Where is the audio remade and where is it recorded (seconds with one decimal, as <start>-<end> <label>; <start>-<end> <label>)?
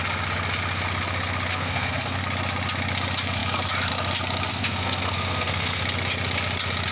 0.0-1.5 recorded; 1.5-2.2 remade; 2.2-4.5 recorded; 4.5-5.8 remade; 5.8-6.9 recorded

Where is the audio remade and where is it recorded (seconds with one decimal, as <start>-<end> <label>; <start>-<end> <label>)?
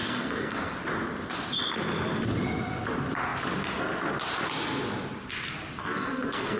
0.0-0.7 remade; 0.7-5.8 recorded; 5.8-6.6 remade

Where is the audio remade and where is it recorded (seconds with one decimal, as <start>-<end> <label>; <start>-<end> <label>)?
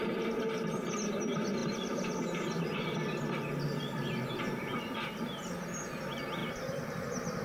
0.0-6.4 recorded; 6.4-7.4 remade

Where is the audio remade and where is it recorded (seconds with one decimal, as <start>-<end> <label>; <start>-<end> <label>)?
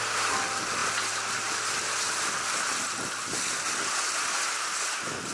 0.0-5.3 recorded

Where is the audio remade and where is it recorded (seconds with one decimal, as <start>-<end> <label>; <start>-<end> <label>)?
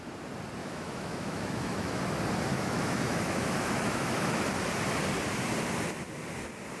0.0-0.6 recorded; 0.6-2.0 remade; 2.0-2.5 recorded; 2.5-4.4 remade; 4.4-6.8 recorded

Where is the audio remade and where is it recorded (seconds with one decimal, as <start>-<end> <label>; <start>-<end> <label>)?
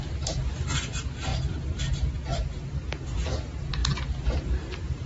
0.0-1.3 remade; 1.3-3.3 recorded; 3.3-3.8 remade; 3.8-4.4 recorded; 4.4-5.1 remade